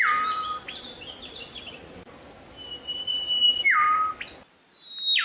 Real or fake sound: real